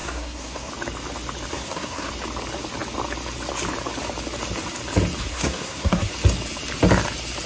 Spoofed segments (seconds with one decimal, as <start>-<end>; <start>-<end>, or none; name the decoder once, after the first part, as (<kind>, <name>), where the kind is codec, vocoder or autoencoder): 0.0-0.7 (codec, SNAC); 1.5-2.1; 5.3-6.1